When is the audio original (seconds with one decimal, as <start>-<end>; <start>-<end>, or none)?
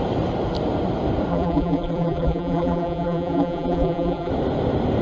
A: 0.0-1.3; 4.3-5.0